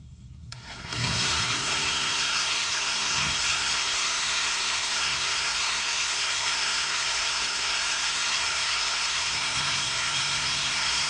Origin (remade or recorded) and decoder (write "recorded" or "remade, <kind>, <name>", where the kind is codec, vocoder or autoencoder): remade, codec, SNAC